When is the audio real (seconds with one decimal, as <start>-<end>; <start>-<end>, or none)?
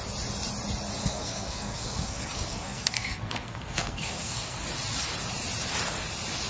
0.0-1.0; 4.6-6.5